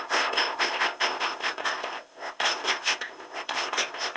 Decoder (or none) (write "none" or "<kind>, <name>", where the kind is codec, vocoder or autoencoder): codec, ZipCodec